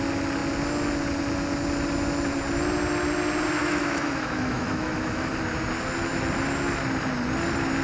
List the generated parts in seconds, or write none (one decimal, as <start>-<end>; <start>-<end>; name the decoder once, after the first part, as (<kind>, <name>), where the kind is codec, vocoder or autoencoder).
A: 3.6-5.3 (autoencoder, DAC-VAE)